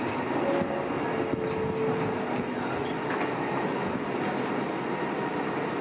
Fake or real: real